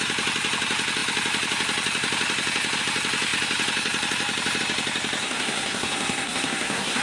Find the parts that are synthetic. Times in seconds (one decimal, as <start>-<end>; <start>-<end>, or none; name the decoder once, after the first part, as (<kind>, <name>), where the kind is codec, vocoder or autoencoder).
5.2-7.0 (codec, SNAC)